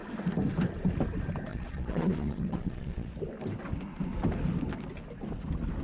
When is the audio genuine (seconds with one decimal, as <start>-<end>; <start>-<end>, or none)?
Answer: 0.0-1.5; 3.1-5.8